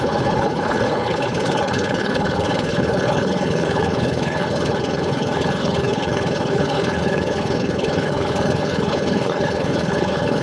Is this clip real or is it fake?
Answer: fake